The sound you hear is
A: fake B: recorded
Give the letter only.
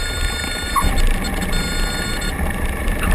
A